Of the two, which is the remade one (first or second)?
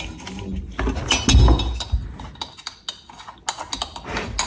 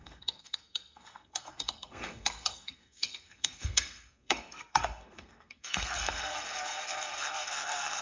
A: second